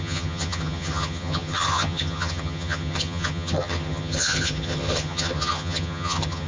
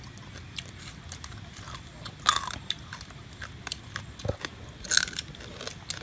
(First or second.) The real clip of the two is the second